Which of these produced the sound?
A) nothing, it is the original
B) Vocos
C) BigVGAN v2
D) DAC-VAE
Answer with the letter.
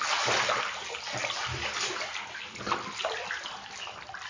A